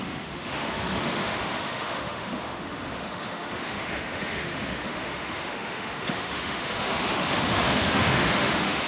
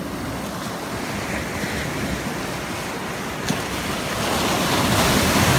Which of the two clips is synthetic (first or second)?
first